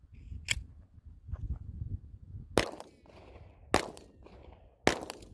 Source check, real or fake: real